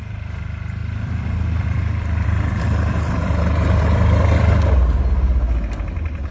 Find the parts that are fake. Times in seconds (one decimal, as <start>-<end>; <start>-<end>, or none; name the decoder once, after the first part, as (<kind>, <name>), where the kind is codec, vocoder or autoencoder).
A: 0.8-4.5 (vocoder, BigVGAN v2)